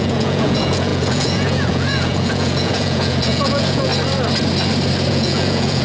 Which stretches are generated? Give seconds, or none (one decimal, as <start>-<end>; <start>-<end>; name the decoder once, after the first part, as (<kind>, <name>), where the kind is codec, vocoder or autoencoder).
0.0-3.9 (vocoder, Vocos); 5.1-5.8